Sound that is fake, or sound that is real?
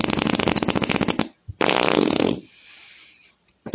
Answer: real